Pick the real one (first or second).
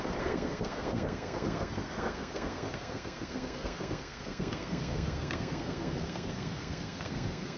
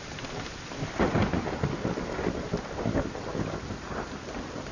second